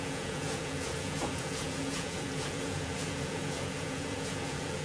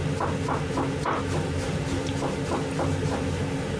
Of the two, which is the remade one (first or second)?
first